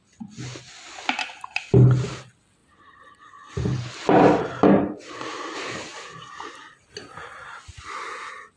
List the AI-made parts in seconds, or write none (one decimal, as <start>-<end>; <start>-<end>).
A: 2.6-7.6